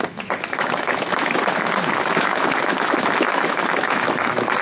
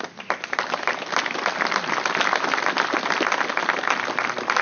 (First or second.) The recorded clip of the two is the second